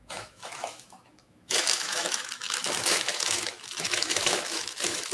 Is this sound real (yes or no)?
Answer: no